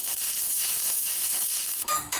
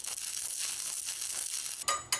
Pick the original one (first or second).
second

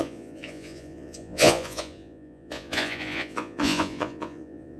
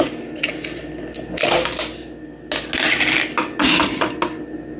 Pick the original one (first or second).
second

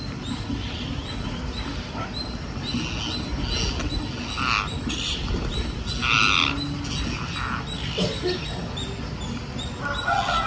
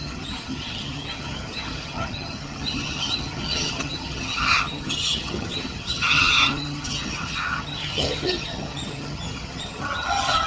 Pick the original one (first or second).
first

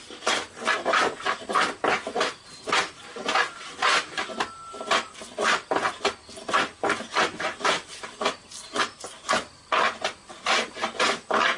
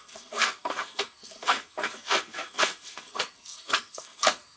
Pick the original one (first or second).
first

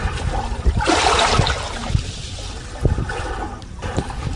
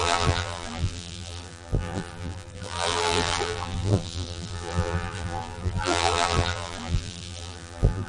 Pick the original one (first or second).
first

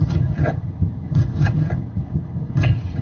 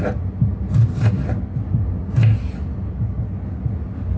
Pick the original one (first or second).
second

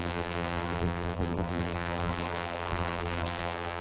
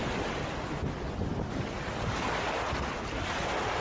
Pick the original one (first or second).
second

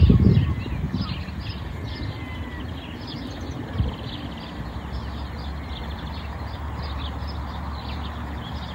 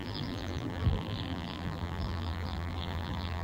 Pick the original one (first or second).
first